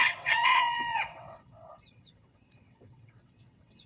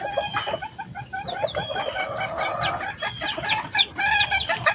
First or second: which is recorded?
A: second